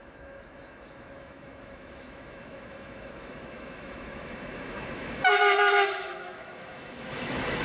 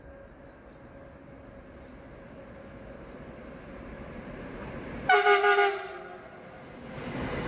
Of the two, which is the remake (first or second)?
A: first